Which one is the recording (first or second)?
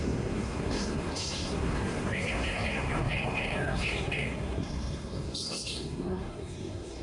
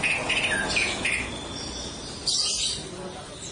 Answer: second